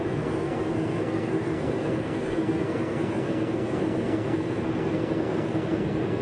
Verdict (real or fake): fake